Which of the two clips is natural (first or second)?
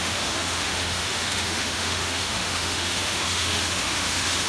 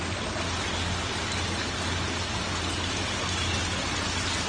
second